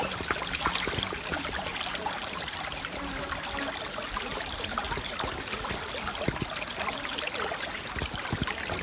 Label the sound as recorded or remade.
recorded